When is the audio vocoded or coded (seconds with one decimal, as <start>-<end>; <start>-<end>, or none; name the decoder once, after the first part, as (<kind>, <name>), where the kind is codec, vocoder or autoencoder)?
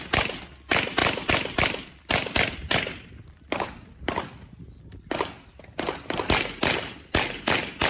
1.0-2.5 (vocoder, BigVGAN v2)